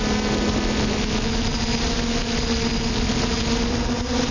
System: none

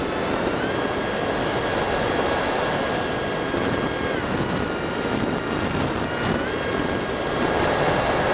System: none